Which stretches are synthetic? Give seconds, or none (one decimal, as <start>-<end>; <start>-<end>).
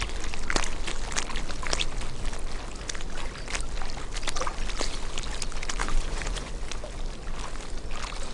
5.8-6.5